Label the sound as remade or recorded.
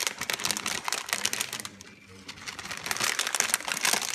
recorded